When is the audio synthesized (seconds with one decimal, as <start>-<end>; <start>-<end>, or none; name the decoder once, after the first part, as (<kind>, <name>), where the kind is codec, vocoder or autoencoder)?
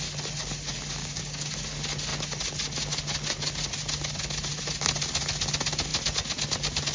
1.0-1.5 (codec, DAC)